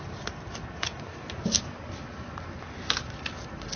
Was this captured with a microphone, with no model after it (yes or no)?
yes